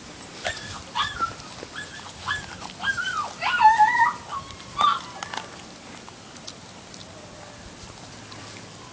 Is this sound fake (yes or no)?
no